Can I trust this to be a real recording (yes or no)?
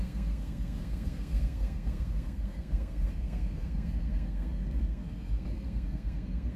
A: no